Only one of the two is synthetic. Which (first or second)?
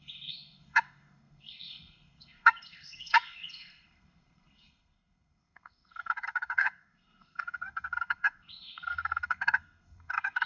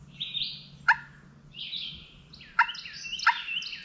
first